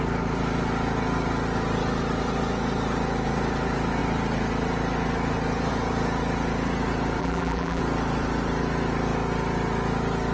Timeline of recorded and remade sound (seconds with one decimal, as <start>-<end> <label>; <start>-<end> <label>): 0.0-7.2 recorded; 7.2-7.8 remade; 7.8-10.3 recorded